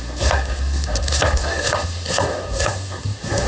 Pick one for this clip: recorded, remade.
remade